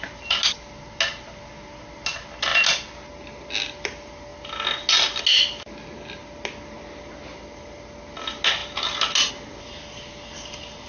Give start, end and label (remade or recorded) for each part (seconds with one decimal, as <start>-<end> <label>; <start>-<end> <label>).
0.0-10.9 recorded